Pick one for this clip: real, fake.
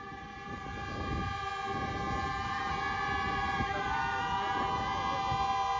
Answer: real